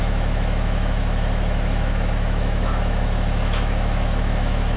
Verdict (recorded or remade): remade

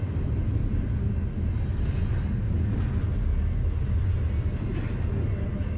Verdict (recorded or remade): recorded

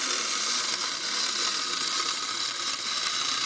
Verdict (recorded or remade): recorded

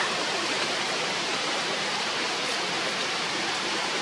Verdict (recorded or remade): remade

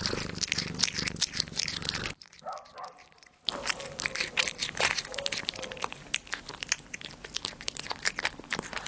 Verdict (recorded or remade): recorded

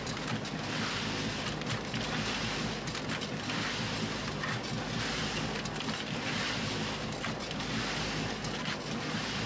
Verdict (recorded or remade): recorded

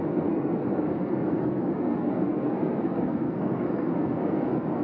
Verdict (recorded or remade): remade